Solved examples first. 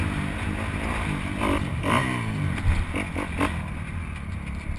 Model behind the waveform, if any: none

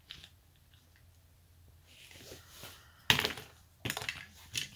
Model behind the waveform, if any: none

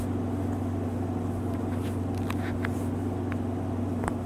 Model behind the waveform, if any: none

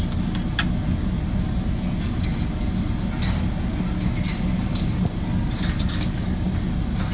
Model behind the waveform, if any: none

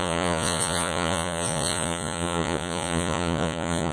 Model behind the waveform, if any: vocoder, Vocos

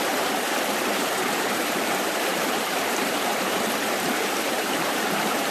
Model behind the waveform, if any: vocoder, BigVGAN v2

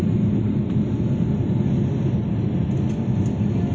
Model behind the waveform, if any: none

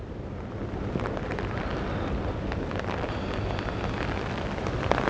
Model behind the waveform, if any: none